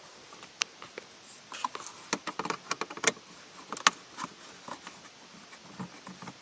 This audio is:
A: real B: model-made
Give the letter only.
A